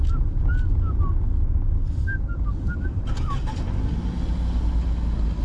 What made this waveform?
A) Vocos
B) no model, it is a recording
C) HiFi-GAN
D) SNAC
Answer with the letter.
B